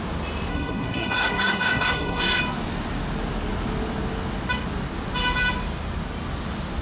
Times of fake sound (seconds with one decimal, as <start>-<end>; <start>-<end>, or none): 0.5-2.4